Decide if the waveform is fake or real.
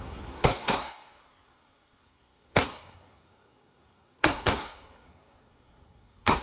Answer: fake